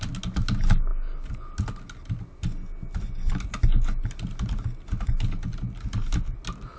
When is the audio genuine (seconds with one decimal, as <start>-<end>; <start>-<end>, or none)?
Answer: 0.0-6.8